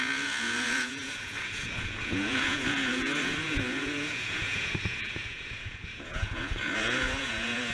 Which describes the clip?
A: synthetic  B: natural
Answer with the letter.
A